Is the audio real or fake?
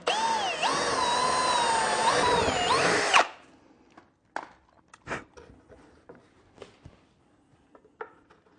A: real